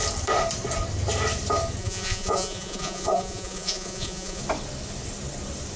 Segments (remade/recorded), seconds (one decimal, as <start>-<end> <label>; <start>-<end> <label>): 0.0-1.8 recorded; 1.8-4.4 remade; 4.4-5.8 recorded